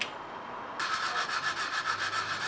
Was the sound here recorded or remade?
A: recorded